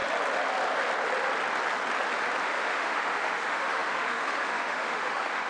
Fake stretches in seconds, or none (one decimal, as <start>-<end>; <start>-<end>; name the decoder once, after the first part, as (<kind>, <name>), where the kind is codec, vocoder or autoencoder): 2.4-5.5 (autoencoder, DAC-VAE)